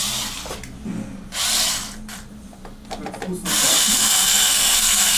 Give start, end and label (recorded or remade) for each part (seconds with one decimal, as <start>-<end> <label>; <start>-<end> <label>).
0.0-3.7 recorded; 3.7-5.2 remade

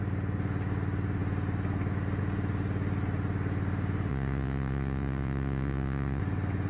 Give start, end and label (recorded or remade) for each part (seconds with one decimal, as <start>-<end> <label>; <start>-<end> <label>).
0.0-4.1 recorded; 4.1-6.2 remade; 6.2-6.7 recorded

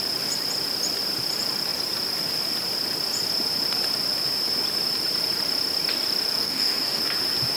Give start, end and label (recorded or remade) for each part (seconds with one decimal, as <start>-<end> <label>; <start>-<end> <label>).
0.0-6.4 recorded; 6.4-7.0 remade; 7.0-7.6 recorded

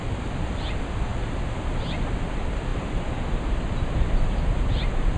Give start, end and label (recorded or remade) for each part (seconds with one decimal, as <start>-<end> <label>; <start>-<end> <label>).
0.0-5.2 recorded

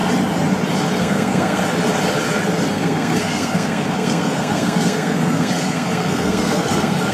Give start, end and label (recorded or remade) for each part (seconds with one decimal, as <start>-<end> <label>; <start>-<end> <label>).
0.0-1.0 recorded; 1.0-1.6 remade; 1.6-2.7 recorded; 2.7-7.1 remade

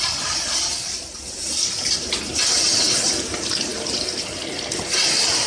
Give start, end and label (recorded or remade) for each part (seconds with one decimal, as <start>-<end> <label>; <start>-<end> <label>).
0.0-5.5 recorded